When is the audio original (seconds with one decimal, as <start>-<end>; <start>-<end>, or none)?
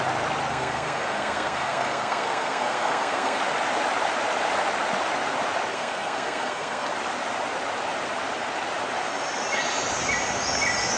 0.0-0.5; 3.4-5.7; 6.9-11.0